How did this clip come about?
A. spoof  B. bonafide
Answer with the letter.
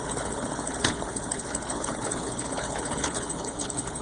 A